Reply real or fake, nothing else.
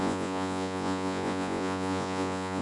fake